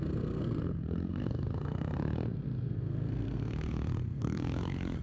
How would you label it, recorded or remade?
remade